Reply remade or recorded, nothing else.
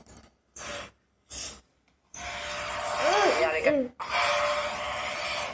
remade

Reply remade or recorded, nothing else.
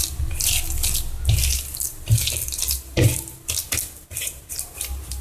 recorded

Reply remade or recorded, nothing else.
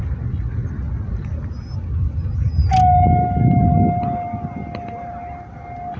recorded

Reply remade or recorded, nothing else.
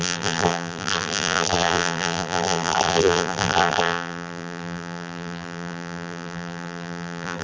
remade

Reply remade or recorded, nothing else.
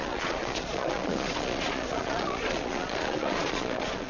remade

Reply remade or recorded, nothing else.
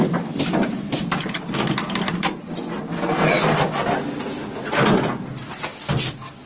recorded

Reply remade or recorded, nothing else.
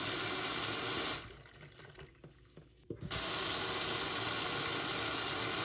recorded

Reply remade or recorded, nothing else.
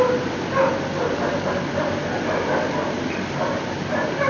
recorded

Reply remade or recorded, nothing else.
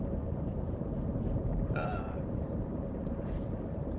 remade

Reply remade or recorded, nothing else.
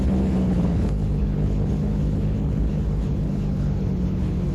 remade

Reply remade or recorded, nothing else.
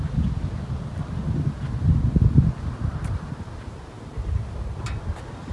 recorded